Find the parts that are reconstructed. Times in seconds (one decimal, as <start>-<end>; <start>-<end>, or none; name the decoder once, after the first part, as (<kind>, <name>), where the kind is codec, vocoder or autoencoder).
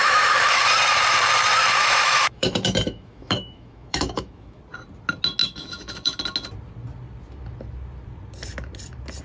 0.0-0.6 (autoencoder, DAC-VAE); 1.8-4.6; 5.4-6.2